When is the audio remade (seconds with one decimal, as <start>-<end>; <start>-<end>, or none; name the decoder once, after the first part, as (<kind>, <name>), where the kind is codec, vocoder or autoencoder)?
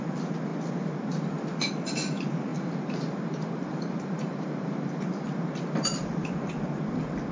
2.5-5.0 (vocoder, BigVGAN v2)